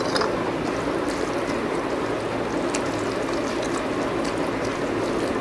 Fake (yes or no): no